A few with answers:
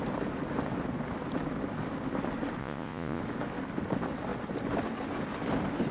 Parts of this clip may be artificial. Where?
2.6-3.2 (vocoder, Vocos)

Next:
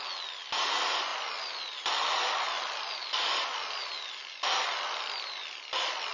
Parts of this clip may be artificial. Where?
none

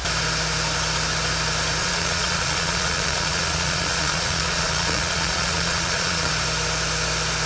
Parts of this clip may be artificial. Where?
1.8-6.3 (vocoder, Vocos)

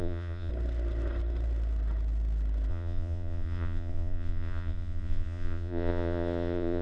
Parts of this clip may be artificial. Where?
0.0-0.5 (vocoder, Vocos); 2.7-6.8